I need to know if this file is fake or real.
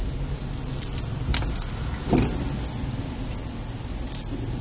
real